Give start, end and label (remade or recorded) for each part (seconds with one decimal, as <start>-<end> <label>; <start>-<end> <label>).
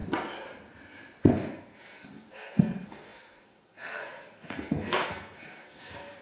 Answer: 0.0-1.3 recorded; 1.3-6.2 remade